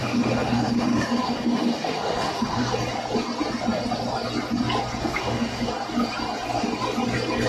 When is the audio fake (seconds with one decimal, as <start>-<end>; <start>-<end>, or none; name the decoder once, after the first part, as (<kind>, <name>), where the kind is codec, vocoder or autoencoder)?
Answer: 0.0-2.7 (autoencoder, DAC-VAE); 5.0-5.7